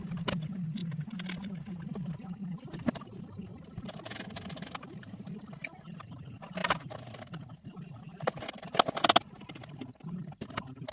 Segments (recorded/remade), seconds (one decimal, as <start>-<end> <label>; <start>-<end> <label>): 0.0-10.9 recorded